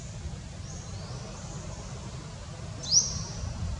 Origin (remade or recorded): recorded